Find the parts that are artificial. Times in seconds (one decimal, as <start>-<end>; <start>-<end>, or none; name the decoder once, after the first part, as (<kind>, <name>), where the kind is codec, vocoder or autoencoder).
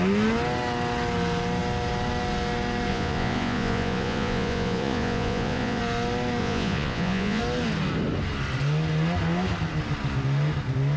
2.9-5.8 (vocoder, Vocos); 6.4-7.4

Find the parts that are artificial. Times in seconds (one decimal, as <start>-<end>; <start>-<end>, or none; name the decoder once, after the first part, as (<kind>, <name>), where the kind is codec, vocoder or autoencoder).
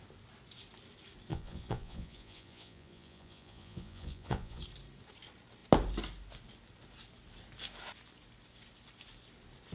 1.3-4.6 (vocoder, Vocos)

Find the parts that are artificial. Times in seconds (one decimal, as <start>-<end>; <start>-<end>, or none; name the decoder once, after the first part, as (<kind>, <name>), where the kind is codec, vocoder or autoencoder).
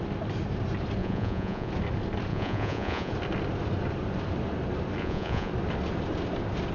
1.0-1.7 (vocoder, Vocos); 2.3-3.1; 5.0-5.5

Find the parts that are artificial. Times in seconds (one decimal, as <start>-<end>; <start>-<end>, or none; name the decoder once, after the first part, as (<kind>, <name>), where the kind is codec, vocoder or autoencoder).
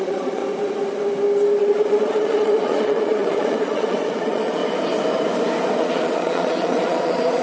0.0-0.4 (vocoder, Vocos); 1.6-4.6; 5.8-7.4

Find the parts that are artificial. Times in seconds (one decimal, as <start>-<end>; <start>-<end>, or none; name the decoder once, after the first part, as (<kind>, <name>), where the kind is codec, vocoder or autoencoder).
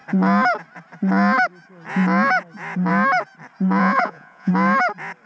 3.8-4.5 (vocoder, Vocos)